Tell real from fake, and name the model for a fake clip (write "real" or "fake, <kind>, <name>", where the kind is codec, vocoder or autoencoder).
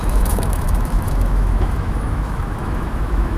fake, autoencoder, DAC-VAE